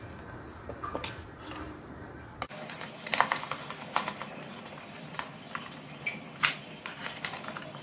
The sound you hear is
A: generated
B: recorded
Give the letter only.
B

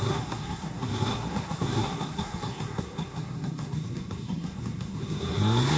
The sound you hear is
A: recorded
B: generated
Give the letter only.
B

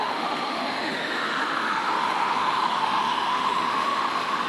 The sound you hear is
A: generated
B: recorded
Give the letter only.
A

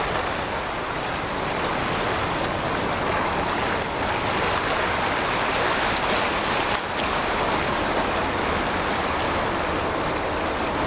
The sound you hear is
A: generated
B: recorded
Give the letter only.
B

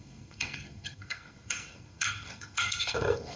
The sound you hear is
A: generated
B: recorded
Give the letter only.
A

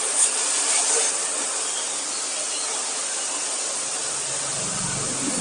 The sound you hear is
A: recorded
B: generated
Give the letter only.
A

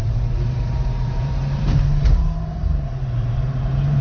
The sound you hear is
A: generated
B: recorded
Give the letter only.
A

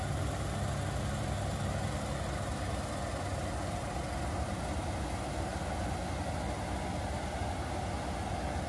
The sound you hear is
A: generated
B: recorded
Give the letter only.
B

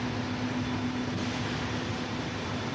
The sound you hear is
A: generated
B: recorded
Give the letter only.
B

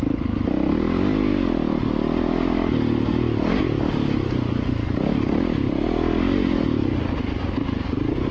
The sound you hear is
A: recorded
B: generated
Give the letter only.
A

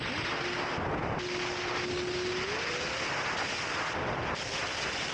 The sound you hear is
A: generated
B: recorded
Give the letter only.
B